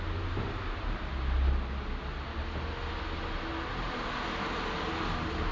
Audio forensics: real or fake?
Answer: real